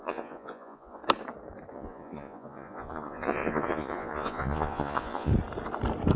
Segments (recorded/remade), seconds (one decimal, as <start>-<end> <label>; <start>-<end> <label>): 0.0-1.0 remade; 1.0-1.7 recorded; 1.7-5.3 remade; 5.3-6.2 recorded